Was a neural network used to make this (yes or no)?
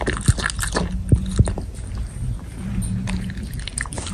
no